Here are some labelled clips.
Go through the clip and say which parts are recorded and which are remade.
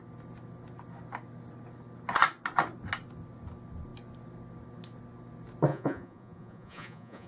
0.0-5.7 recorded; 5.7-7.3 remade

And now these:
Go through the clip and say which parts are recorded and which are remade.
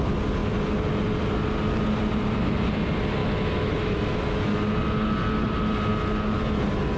0.0-3.2 recorded; 3.2-4.4 remade; 4.4-7.0 recorded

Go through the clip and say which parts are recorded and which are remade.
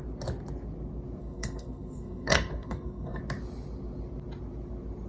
0.0-1.2 recorded; 1.2-3.2 remade; 3.2-5.1 recorded